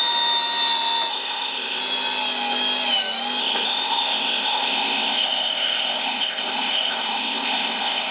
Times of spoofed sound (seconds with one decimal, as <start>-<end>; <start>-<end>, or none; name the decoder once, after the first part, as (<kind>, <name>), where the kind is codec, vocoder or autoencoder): 1.1-1.8 (codec, ZipCodec); 3.4-8.1